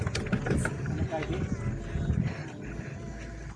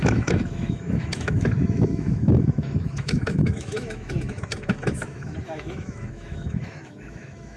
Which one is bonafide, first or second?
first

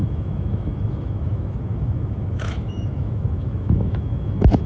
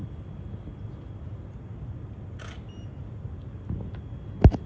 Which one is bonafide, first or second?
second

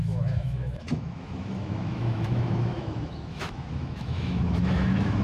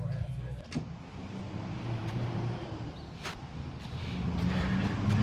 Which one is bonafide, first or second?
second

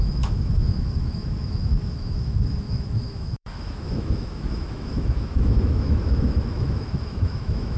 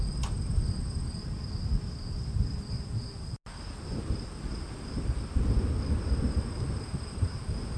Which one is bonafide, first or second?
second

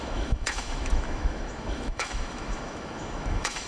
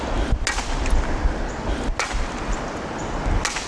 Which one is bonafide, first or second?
second